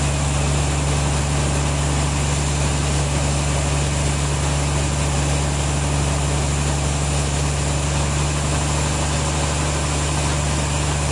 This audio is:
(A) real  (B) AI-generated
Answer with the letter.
A